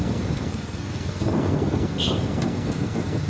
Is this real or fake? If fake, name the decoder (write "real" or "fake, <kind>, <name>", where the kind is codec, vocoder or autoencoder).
fake, codec, SNAC